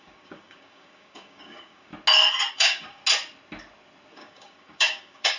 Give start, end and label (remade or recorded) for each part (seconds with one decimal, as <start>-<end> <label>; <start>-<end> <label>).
0.0-1.9 remade; 1.9-2.5 recorded; 2.5-3.0 remade; 3.0-4.1 recorded; 4.1-5.4 remade